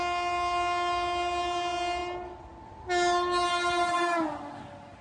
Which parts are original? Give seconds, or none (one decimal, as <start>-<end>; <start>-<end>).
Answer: 0.0-5.0